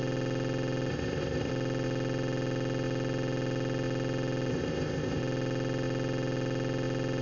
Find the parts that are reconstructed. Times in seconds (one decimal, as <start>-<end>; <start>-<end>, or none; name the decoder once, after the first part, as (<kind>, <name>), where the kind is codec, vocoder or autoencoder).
0.9-1.5 (codec, ZipCodec); 4.5-5.2